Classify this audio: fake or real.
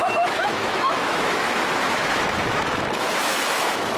fake